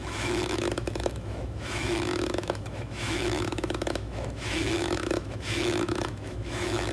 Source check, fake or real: fake